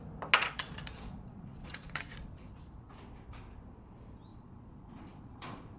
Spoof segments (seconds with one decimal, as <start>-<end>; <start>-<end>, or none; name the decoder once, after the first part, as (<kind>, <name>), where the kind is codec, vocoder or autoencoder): 0.4-2.9 (vocoder, Vocos); 4.3-5.8